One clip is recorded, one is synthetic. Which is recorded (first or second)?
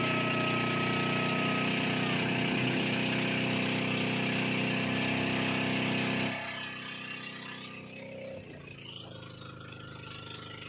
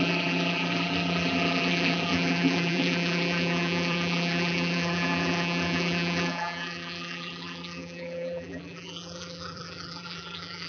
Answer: first